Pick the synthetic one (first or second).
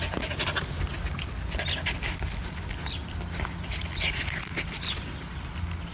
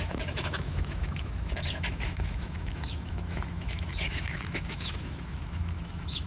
second